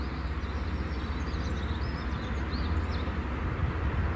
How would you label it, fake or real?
real